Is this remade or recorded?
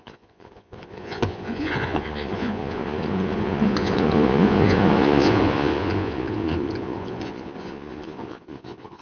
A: remade